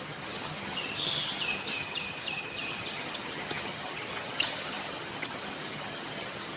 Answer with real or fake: fake